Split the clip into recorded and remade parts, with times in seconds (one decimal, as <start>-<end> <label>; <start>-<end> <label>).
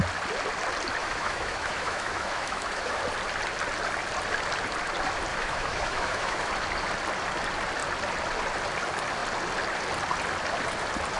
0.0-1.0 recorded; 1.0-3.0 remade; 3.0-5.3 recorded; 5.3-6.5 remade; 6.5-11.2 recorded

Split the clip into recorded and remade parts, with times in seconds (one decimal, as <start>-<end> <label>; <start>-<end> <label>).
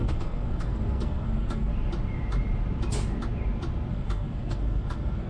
0.0-1.7 remade; 1.7-3.9 recorded; 3.9-5.3 remade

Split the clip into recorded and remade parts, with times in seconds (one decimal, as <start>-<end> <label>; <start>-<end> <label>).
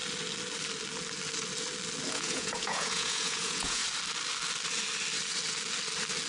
0.0-2.1 recorded; 2.1-3.8 remade; 3.8-6.3 recorded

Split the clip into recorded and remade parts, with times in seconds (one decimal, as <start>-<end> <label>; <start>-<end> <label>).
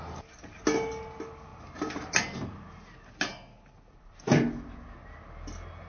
0.0-5.9 recorded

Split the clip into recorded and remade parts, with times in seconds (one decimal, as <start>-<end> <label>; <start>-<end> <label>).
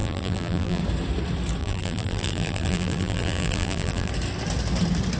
0.0-0.8 remade; 0.8-1.6 recorded; 1.6-4.1 remade; 4.1-5.2 recorded